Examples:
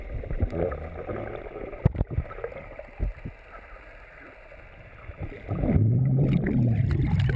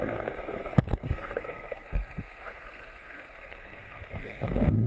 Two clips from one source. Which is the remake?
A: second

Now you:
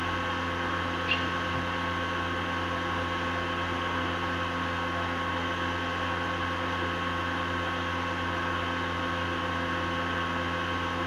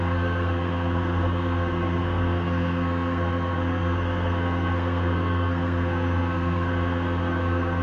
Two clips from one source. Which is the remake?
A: second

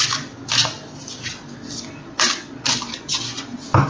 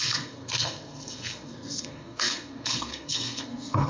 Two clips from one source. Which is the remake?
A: second